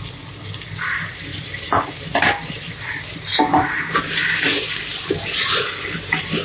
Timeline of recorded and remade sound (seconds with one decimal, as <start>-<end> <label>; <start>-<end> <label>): 0.0-1.3 recorded; 1.3-2.0 remade; 2.0-2.4 recorded; 2.4-4.1 remade; 4.1-4.5 recorded; 4.5-5.1 remade; 5.1-6.4 recorded